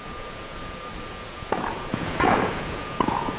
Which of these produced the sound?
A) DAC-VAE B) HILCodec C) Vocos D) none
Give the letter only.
C